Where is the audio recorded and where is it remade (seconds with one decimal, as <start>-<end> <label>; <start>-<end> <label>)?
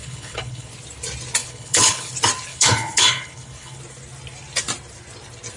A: 0.0-0.7 remade; 0.7-1.4 recorded; 1.4-2.1 remade; 2.1-2.5 recorded; 2.5-3.8 remade; 3.8-5.6 recorded